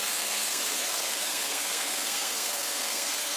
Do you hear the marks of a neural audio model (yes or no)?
yes